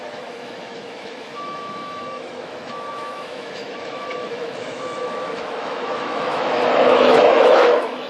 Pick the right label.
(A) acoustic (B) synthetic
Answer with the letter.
B